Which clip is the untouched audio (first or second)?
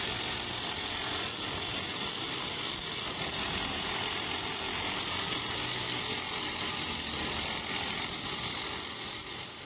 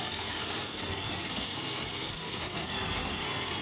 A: first